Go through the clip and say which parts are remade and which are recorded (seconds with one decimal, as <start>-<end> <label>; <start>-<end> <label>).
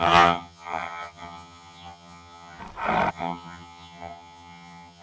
0.0-2.6 remade; 2.6-3.1 recorded; 3.1-5.0 remade